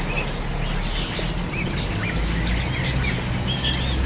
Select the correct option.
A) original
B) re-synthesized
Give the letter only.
A